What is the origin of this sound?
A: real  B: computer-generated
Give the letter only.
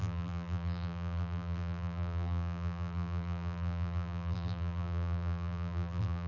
B